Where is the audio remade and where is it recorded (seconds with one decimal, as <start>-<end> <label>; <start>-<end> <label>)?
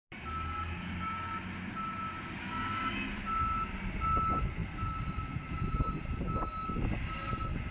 0.0-7.7 recorded